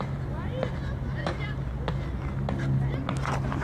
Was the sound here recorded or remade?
recorded